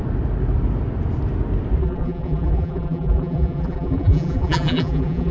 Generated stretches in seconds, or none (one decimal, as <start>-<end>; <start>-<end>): 1.8-5.3